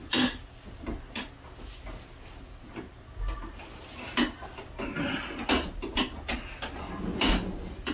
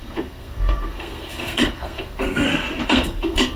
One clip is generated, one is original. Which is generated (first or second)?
second